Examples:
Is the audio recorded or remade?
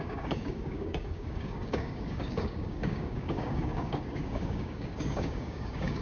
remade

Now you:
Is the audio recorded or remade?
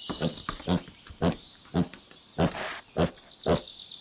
recorded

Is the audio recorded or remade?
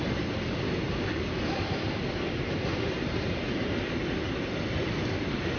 recorded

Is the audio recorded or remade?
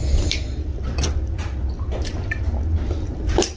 recorded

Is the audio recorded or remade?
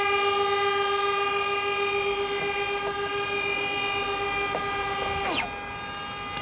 recorded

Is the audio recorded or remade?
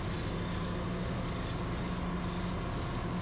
recorded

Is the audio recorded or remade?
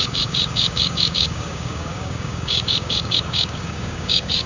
remade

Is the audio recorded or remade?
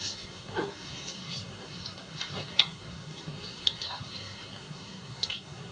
remade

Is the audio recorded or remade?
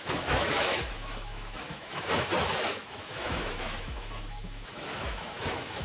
remade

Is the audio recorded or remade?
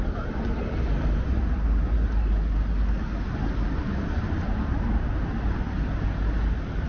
recorded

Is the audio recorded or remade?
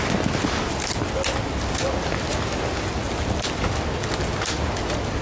recorded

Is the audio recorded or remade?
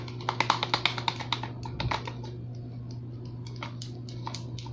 recorded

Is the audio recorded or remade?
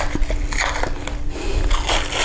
recorded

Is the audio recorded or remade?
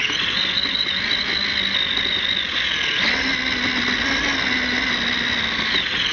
recorded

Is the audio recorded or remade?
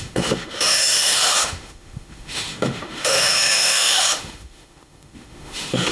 remade